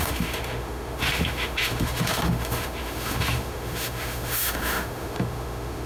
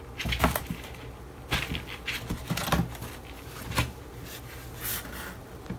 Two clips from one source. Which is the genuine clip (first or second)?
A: second